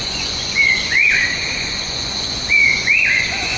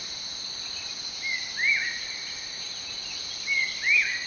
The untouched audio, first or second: second